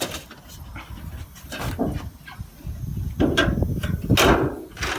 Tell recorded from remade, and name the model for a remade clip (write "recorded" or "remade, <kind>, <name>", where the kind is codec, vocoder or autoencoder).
recorded